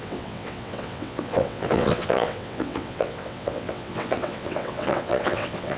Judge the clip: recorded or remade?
remade